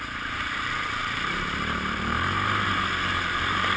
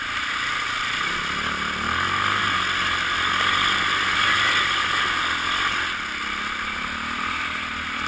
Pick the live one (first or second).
second